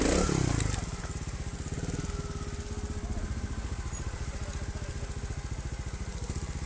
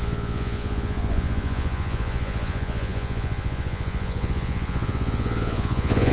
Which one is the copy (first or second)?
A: second